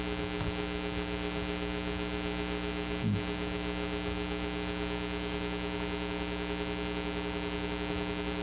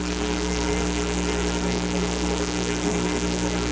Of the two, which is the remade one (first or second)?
second